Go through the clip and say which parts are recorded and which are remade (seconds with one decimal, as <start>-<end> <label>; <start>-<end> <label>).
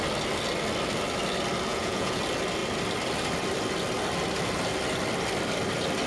0.0-1.7 recorded; 1.7-2.2 remade; 2.2-6.1 recorded